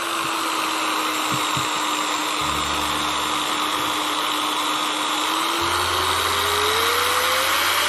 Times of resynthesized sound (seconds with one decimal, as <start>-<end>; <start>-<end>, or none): none